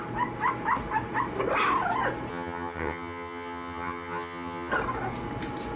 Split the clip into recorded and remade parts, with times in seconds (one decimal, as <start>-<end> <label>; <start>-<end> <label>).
0.0-2.3 recorded; 2.3-4.7 remade; 4.7-5.8 recorded

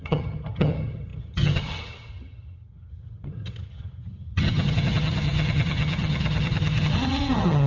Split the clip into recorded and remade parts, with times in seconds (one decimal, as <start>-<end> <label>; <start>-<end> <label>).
0.0-7.7 remade

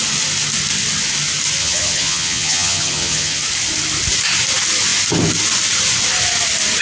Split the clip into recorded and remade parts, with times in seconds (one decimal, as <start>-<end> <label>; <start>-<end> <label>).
0.0-1.6 recorded; 1.6-3.4 remade; 3.4-6.8 recorded

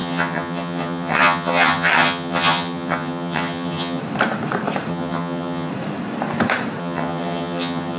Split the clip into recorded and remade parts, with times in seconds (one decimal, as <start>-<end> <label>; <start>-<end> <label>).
0.0-4.0 remade; 4.0-4.9 recorded; 4.9-5.7 remade; 5.7-6.8 recorded; 6.8-8.0 remade